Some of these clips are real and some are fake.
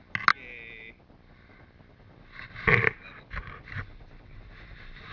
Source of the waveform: real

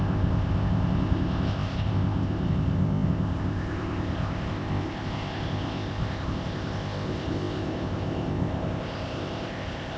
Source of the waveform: fake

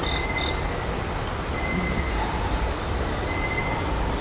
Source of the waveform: real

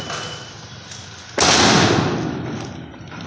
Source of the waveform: real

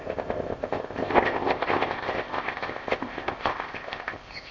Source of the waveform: fake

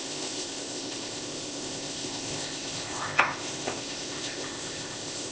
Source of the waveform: fake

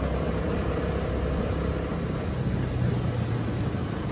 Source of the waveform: real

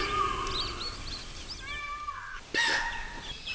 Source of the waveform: real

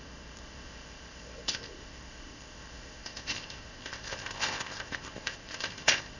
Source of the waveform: fake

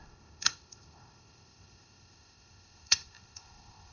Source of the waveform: fake